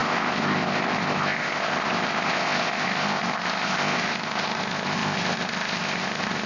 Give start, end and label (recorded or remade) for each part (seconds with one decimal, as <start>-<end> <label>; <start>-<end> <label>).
0.0-6.5 remade